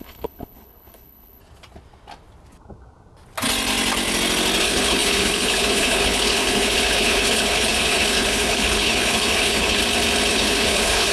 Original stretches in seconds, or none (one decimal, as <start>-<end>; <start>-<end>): 1.4-4.6; 9.8-10.3